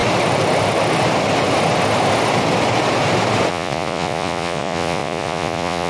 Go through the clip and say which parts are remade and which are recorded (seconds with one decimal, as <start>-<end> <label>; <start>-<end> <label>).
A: 0.0-3.5 recorded; 3.5-5.9 remade